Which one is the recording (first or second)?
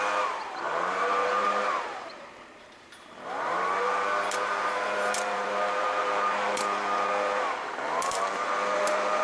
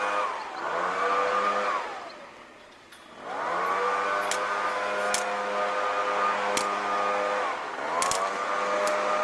second